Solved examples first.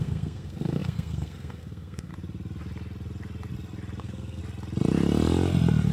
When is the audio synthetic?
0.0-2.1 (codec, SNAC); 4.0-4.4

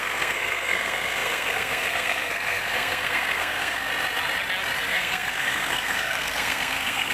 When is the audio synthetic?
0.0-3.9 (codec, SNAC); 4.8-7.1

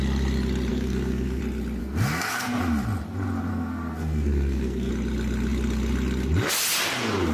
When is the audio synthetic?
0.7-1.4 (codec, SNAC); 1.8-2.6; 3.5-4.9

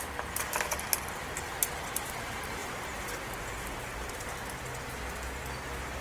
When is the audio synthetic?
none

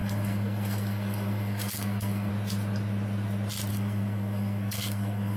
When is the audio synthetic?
0.0-2.3 (codec, SNAC); 3.7-5.4

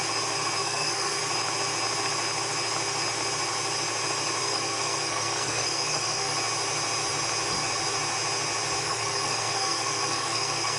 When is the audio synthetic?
0.6-1.2 (codec, SNAC); 4.4-6.3; 8.8-10.8